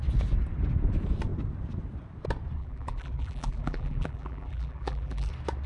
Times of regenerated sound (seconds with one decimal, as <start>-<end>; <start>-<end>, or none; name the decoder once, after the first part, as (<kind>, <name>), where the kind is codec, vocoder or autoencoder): 2.6-5.3 (vocoder, BigVGAN v2)